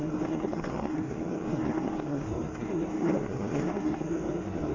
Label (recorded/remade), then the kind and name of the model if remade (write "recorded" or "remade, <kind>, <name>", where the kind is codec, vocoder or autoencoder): remade, codec, SNAC